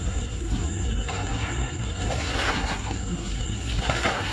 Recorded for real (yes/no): no